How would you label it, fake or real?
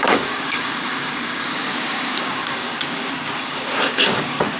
fake